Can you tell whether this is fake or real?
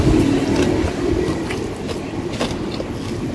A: real